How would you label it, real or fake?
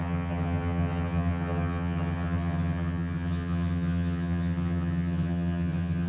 fake